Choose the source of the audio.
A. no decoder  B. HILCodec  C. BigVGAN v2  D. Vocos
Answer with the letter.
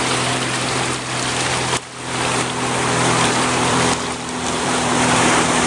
C